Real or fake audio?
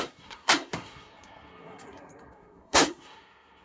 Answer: fake